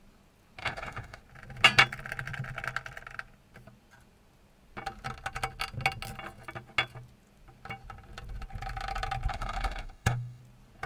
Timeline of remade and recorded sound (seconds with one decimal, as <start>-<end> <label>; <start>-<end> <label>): 0.0-0.6 recorded; 0.6-1.2 remade; 1.2-9.3 recorded; 9.3-10.4 remade; 10.4-10.9 recorded